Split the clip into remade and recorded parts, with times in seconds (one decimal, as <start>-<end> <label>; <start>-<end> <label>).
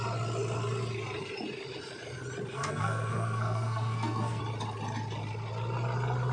0.0-2.5 recorded; 2.5-4.4 remade; 4.4-6.3 recorded